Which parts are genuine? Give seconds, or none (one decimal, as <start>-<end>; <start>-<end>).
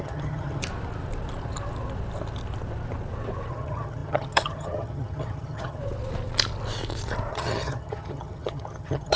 0.6-3.5; 5.8-7.3